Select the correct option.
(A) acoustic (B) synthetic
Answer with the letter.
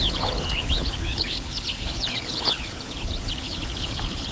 B